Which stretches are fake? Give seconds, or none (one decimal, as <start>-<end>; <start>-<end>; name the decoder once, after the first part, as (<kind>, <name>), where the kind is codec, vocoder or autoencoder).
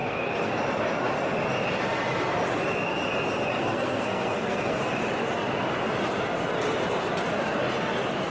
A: 0.0-0.5 (codec, SNAC); 3.5-4.8